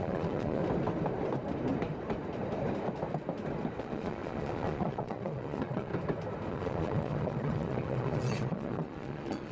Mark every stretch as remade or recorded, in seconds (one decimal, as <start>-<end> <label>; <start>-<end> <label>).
0.0-0.6 remade; 0.6-3.8 recorded; 3.8-5.9 remade; 5.9-6.5 recorded; 6.5-9.5 remade